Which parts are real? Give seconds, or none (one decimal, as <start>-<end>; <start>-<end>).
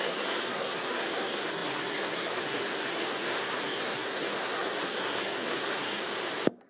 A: 6.0-6.7